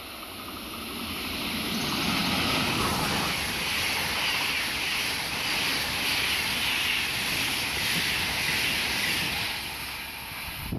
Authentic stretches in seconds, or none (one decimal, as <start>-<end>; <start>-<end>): 0.0-5.7; 8.1-10.8